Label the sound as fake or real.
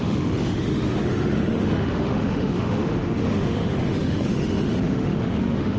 fake